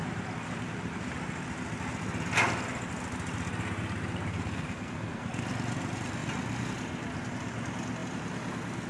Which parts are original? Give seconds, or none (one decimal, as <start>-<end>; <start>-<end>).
0.0-4.3; 5.4-8.9